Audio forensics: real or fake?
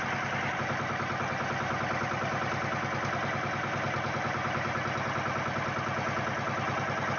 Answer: real